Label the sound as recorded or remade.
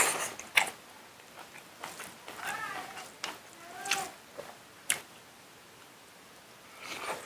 recorded